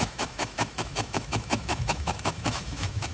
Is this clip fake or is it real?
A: fake